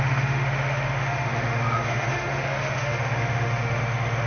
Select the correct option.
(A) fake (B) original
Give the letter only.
A